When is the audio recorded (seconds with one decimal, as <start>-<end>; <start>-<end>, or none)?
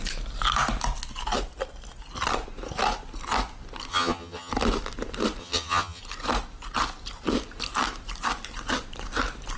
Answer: 0.0-3.9; 4.5-5.4; 6.0-9.6